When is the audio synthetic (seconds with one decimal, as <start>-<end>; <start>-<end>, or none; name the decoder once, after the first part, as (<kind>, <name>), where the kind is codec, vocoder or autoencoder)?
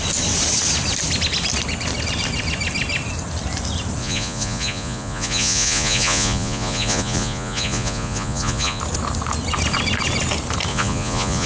4.0-8.8 (vocoder, Vocos); 10.7-11.5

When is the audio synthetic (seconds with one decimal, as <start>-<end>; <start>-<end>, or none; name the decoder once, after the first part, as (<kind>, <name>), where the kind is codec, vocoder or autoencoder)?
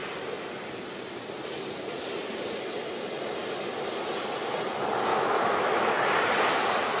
5.1-5.9 (autoencoder, DAC-VAE)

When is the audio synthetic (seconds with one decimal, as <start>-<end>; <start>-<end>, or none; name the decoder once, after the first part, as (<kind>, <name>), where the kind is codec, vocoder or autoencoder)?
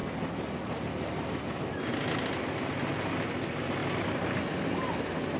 none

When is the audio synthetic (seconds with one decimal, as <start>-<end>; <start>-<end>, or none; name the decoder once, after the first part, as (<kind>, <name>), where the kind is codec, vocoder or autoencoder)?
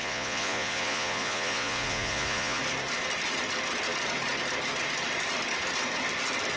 0.0-2.6 (vocoder, Vocos)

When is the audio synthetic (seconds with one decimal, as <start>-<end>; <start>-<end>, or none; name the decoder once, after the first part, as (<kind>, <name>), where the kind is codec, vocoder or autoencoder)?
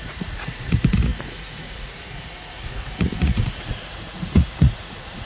0.0-5.3 (vocoder, Vocos)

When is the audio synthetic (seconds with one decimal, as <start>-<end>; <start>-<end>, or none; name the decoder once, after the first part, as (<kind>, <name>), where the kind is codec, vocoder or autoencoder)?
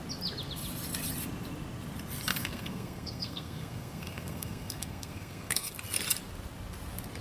2.3-5.7 (codec, SNAC)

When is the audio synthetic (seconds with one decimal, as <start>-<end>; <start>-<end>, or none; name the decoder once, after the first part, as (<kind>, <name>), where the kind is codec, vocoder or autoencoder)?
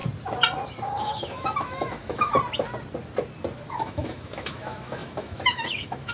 1.0-2.3 (autoencoder, DAC-VAE); 3.7-6.1